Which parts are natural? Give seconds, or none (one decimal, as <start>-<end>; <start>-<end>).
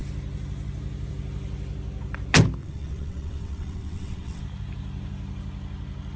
0.0-2.6; 4.4-6.2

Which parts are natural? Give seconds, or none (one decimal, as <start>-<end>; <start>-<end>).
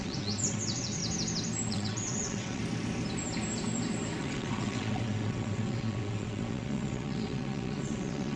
1.0-1.7; 2.6-4.2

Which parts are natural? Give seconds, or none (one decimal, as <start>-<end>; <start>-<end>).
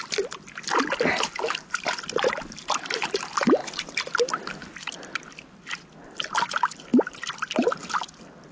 0.0-8.5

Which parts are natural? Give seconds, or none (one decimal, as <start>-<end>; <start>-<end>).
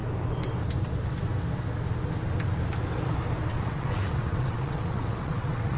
0.0-3.5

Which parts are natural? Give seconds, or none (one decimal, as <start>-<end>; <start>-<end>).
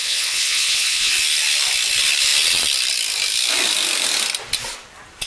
1.1-5.3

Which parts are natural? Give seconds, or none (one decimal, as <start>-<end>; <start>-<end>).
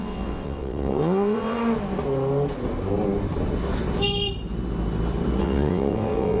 1.6-5.4